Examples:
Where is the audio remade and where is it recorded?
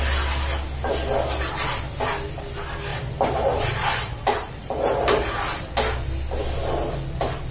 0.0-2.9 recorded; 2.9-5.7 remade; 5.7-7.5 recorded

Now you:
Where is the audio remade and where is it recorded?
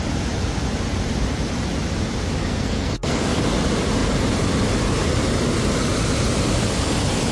0.0-2.4 recorded; 2.4-3.4 remade; 3.4-7.3 recorded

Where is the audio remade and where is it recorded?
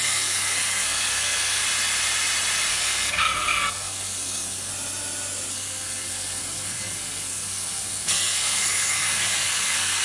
0.0-1.6 remade; 1.6-2.7 recorded; 2.7-4.7 remade; 4.7-5.5 recorded; 5.5-10.0 remade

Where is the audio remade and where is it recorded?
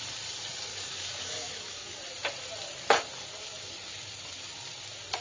0.0-0.7 recorded; 0.7-2.0 remade; 2.0-5.2 recorded